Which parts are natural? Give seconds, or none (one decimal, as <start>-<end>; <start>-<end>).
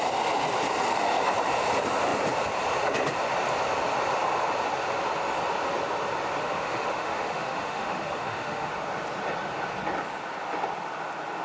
0.0-6.4; 8.7-11.4